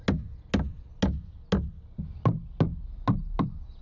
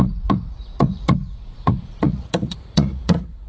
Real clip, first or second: first